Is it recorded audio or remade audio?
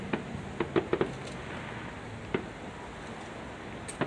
recorded